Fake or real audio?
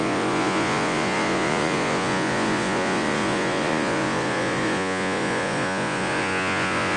fake